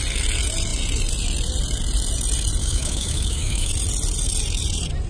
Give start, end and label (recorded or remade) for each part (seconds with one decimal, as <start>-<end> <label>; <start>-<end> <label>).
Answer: 0.0-2.6 recorded; 2.6-3.7 remade; 3.7-5.1 recorded